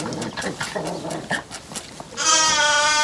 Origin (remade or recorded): recorded